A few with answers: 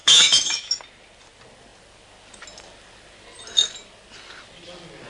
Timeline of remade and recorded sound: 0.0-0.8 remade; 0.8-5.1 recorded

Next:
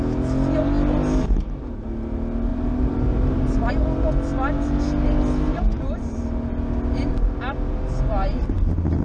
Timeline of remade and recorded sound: 0.0-2.5 recorded; 2.5-3.7 remade; 3.7-5.5 recorded; 5.5-6.2 remade; 6.2-9.0 recorded

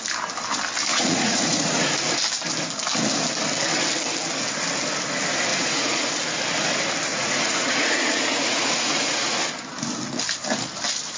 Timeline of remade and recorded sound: 0.0-0.9 recorded; 0.9-1.9 remade; 1.9-5.5 recorded; 5.5-6.1 remade; 6.1-7.1 recorded; 7.1-9.4 remade; 9.4-11.2 recorded

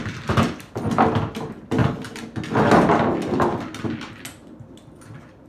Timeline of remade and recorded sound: 0.0-5.5 recorded

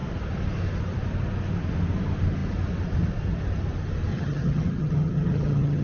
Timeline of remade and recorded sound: 0.0-4.1 recorded; 4.1-5.8 remade

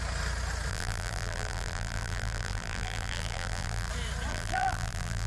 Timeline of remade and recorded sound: 0.0-0.7 recorded; 0.7-3.9 remade; 3.9-4.3 recorded; 4.3-5.3 remade

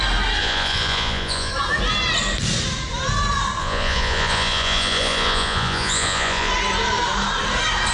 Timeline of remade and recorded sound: 0.0-0.4 recorded; 0.4-1.5 remade; 1.5-3.6 recorded; 3.6-6.5 remade; 6.5-7.9 recorded